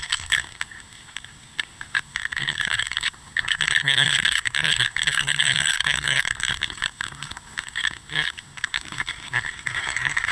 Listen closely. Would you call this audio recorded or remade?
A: remade